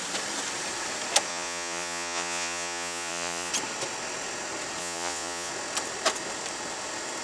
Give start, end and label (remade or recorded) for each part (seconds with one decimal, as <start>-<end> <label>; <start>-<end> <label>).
0.0-1.3 recorded; 1.3-3.5 remade; 3.5-4.8 recorded; 4.8-5.5 remade; 5.5-7.2 recorded